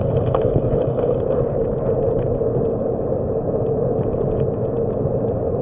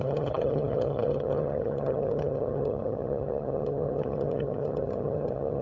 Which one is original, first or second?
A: first